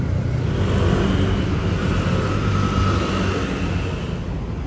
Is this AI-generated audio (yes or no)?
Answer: no